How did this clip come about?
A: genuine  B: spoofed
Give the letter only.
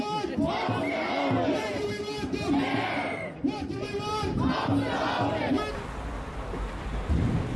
A